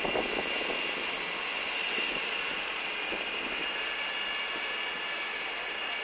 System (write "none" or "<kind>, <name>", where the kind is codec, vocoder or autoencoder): none